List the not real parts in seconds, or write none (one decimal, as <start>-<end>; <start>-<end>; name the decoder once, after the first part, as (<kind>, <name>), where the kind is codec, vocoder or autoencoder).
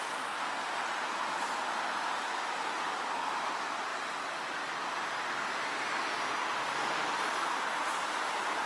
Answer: none